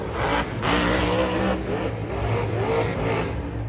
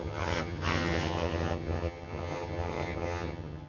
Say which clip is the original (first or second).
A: first